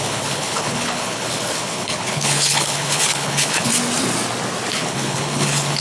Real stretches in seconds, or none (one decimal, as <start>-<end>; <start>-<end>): 3.7-4.7